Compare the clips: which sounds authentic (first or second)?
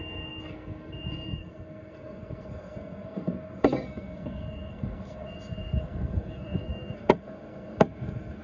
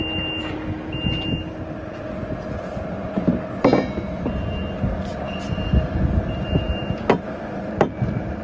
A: second